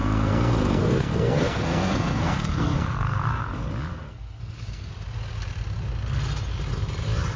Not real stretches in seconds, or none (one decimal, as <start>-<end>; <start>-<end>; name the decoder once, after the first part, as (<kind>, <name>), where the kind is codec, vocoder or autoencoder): 0.0-3.4 (codec, SNAC); 3.9-4.9

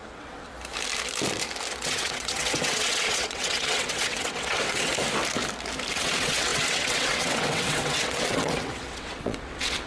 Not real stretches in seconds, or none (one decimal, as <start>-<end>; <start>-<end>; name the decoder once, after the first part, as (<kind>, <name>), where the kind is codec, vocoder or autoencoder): 0.0-0.5 (vocoder, WaveNeXt); 1.8-4.9; 5.9-9.9

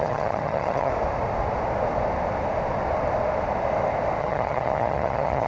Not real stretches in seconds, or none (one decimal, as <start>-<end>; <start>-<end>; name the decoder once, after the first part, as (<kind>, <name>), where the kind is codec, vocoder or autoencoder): 0.0-0.9 (vocoder, HiFi-GAN); 4.2-5.5

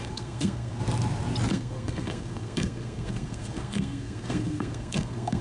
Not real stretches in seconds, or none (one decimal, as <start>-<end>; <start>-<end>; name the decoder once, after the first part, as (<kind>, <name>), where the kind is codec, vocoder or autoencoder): 0.0-0.8 (codec, SNAC); 1.5-5.4